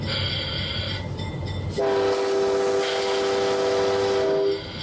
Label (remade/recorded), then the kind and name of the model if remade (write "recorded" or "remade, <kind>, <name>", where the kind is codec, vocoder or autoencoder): recorded